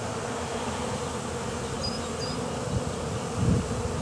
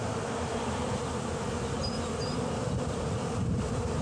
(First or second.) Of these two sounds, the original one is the first